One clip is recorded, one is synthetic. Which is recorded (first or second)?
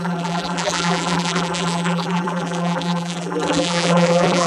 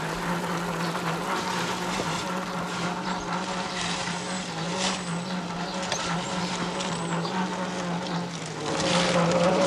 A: second